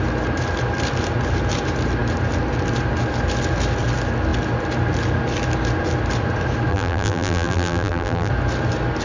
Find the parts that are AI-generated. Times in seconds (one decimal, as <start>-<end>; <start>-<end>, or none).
6.7-8.3